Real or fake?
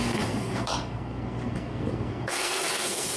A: fake